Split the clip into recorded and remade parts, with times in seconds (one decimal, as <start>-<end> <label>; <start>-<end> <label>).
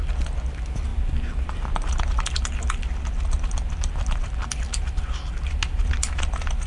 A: 0.0-6.7 recorded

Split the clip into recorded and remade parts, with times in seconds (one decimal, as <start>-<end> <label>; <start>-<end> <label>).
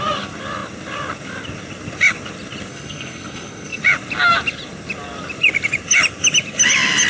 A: 0.0-2.7 recorded; 2.7-3.8 remade; 3.8-7.1 recorded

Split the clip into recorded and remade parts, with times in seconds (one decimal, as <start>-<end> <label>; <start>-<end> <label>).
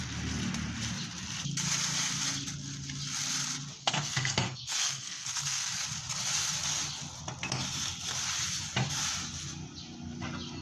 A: 0.0-3.8 recorded; 3.8-5.7 remade; 5.7-10.6 recorded